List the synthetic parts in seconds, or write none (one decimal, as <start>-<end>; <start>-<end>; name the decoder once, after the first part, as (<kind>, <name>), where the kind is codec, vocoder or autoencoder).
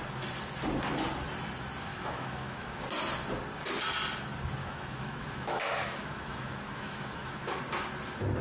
1.9-2.8 (autoencoder, DAC-VAE); 4.6-7.6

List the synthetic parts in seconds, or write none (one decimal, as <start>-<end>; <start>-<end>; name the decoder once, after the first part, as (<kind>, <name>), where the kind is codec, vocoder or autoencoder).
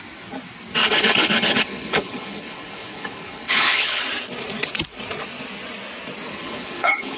0.8-4.0 (codec, HILCodec); 6.3-7.2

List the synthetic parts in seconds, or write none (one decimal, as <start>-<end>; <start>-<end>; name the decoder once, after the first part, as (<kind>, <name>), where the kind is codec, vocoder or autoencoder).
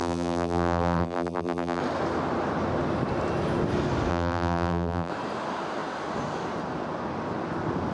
0.0-1.8 (vocoder, BigVGAN v2); 4.1-5.1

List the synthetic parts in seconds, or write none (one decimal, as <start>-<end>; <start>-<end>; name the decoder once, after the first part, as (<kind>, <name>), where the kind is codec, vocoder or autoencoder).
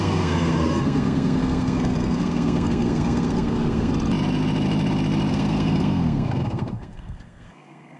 0.0-3.9 (codec, SNAC); 5.3-8.0